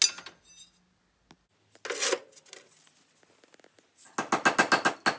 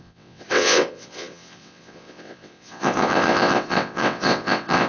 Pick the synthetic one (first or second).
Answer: second